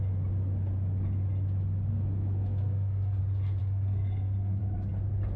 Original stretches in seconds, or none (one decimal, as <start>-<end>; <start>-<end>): 0.0-1.9; 3.2-3.6; 4.6-5.4